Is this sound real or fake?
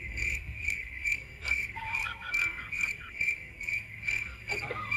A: fake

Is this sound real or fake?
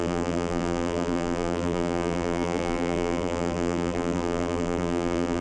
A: fake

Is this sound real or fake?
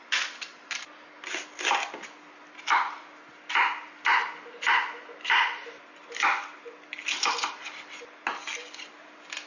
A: real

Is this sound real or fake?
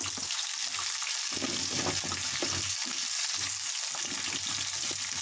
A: real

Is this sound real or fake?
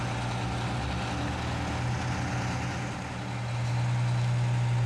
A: real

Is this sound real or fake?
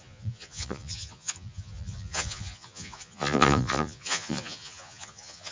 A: fake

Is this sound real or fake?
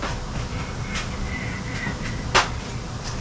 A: real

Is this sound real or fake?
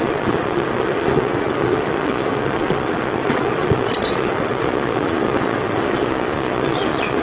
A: fake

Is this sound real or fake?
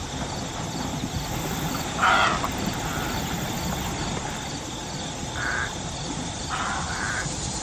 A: real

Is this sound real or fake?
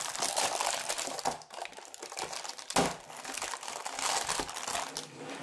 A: real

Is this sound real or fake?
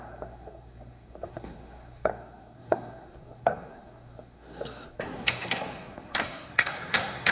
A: fake